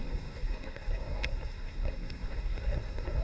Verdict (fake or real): fake